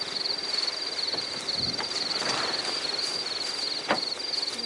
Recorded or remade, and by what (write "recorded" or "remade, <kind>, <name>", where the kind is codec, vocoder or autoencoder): recorded